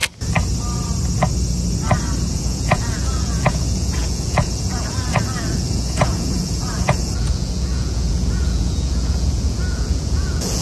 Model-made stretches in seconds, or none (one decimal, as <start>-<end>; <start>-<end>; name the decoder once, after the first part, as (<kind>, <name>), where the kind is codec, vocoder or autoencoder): 2.3-10.6 (vocoder, Vocos)

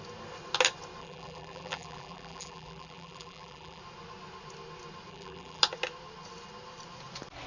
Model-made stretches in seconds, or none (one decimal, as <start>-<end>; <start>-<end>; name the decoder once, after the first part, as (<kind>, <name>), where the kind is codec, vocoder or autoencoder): 1.0-3.8 (vocoder, BigVGAN v2); 5.1-5.6

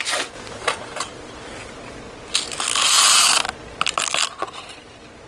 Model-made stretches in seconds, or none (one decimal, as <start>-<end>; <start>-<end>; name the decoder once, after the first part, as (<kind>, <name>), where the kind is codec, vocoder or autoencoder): none

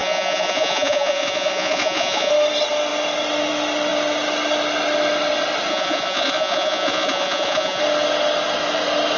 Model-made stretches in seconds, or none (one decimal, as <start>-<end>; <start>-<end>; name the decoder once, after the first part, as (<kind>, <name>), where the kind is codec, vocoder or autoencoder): 0.0-2.3 (vocoder, Vocos); 5.7-7.8

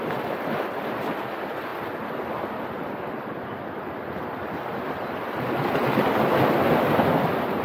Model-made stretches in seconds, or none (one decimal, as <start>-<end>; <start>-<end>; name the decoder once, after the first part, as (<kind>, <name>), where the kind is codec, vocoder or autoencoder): none